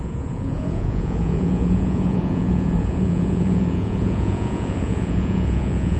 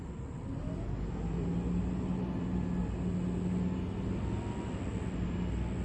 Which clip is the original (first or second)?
second